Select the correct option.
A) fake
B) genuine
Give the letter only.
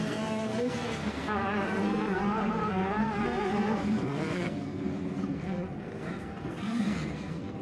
A